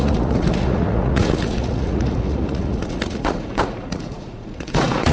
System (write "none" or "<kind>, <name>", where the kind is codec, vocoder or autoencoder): vocoder, Vocos